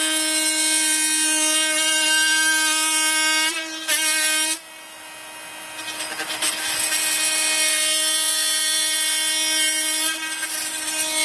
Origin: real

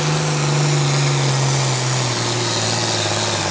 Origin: real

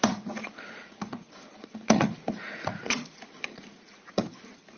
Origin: fake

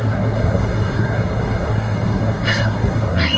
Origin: fake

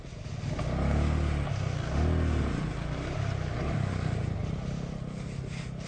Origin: real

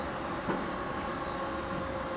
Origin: real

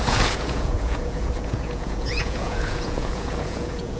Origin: fake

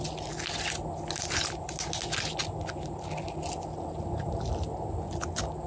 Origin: real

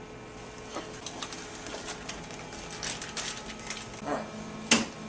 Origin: real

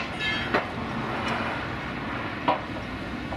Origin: real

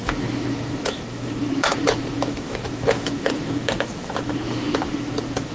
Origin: fake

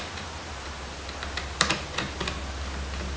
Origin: real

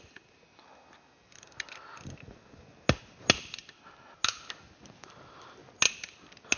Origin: real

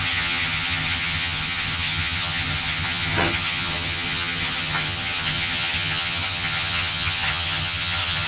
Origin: fake